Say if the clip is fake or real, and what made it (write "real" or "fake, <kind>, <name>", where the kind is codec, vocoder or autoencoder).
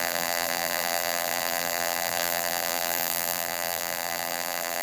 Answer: fake, vocoder, BigVGAN v2